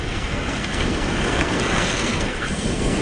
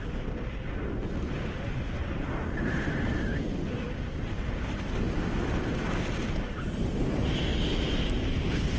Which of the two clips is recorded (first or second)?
second